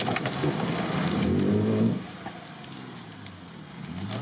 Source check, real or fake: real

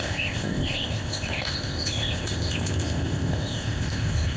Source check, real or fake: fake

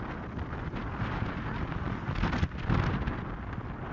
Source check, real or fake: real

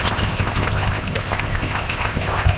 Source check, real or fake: fake